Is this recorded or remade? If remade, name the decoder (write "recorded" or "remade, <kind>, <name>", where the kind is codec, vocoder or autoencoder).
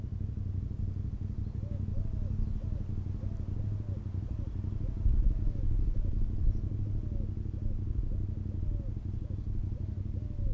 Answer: recorded